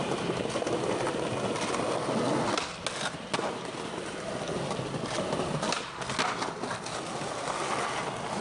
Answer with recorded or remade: recorded